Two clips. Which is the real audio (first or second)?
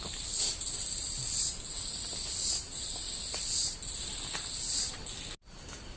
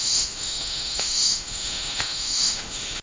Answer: first